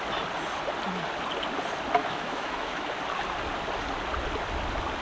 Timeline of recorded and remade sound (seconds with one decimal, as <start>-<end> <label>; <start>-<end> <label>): 0.0-2.0 recorded; 2.0-2.9 remade; 2.9-5.0 recorded